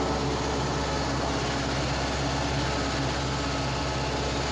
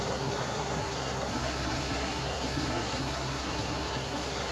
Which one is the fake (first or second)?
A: second